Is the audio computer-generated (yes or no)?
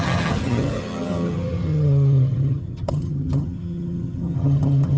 yes